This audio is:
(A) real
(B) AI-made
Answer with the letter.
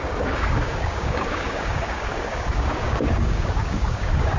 B